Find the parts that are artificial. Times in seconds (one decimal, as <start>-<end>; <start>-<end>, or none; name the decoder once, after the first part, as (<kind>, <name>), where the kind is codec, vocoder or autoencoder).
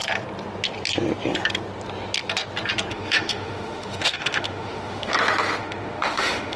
2.9-5.1 (autoencoder, DAC-VAE); 5.6-6.6